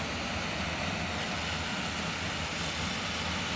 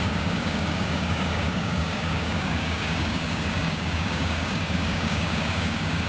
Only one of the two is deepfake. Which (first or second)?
second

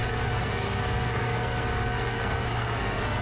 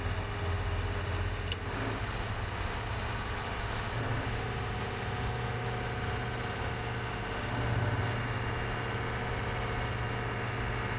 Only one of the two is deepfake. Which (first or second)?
first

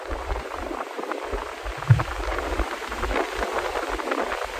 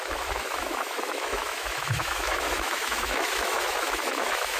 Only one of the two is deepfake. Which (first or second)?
second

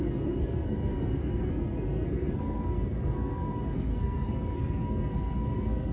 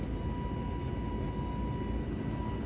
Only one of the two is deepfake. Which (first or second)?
first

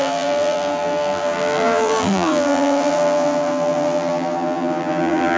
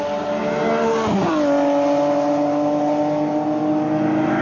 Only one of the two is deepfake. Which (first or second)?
first